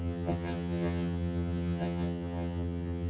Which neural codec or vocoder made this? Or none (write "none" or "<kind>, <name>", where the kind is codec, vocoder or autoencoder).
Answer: vocoder, HiFi-GAN